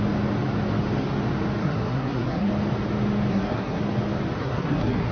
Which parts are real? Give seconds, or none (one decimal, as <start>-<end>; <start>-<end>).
0.0-1.6; 2.5-3.3; 3.8-4.4